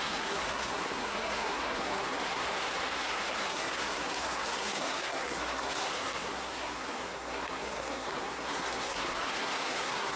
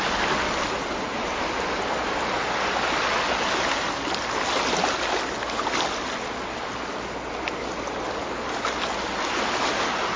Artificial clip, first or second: first